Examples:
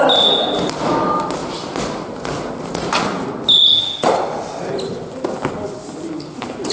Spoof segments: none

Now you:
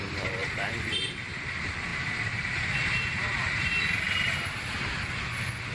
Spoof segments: 0.4-1.0 (vocoder, BigVGAN v2)